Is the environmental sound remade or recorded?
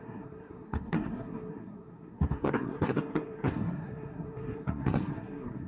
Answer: remade